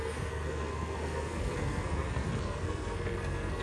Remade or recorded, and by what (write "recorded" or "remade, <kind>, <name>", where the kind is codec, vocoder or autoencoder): remade, codec, SNAC